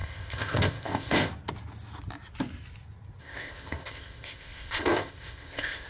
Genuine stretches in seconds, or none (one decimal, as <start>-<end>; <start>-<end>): 1.3-3.2